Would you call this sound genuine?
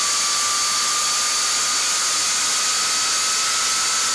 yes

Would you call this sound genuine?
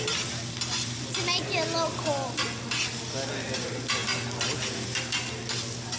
yes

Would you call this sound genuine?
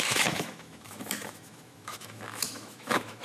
no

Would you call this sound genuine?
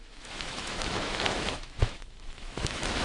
no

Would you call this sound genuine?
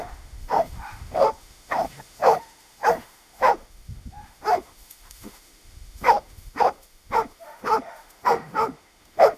no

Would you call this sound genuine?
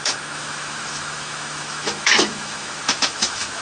no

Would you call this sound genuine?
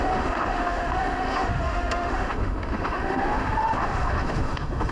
no